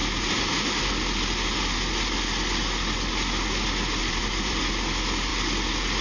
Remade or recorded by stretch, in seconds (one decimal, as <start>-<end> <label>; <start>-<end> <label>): 0.0-4.0 recorded; 4.0-4.6 remade; 4.6-6.0 recorded